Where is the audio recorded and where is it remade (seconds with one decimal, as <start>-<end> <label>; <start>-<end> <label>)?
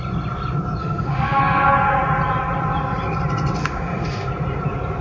0.0-0.8 recorded; 0.8-1.4 remade; 1.4-3.6 recorded; 3.6-4.3 remade; 4.3-5.0 recorded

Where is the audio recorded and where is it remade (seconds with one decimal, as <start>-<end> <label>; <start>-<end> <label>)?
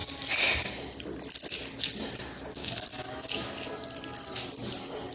0.0-2.6 recorded; 2.6-3.5 remade; 3.5-5.1 recorded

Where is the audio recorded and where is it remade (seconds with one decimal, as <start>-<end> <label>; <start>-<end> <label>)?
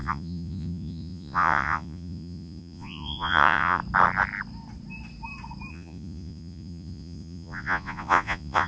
0.0-3.8 remade; 3.8-5.7 recorded; 5.7-8.7 remade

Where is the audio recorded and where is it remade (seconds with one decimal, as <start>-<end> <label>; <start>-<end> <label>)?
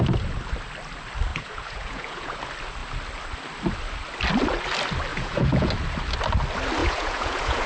0.0-1.3 recorded; 1.3-2.4 remade; 2.4-5.1 recorded; 5.1-5.7 remade; 5.7-6.8 recorded; 6.8-7.7 remade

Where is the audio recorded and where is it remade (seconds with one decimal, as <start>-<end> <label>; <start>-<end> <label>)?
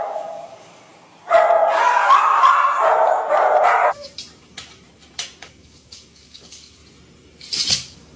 0.0-0.9 remade; 0.9-5.4 recorded; 5.4-6.8 remade; 6.8-7.7 recorded; 7.7-8.2 remade